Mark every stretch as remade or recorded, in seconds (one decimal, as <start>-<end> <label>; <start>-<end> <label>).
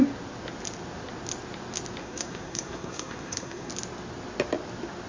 0.0-2.0 recorded; 2.0-3.7 remade; 3.7-5.1 recorded